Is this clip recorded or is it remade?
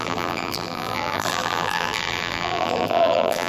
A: remade